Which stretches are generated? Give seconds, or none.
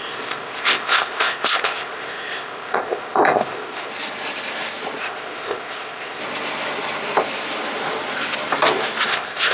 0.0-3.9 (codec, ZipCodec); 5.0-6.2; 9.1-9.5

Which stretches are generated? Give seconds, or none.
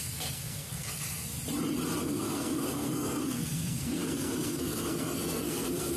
0.0-1.3 (codec, SNAC); 2.0-6.0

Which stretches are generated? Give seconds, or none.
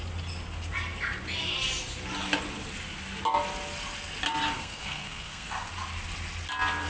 4.5-5.7 (codec, SNAC)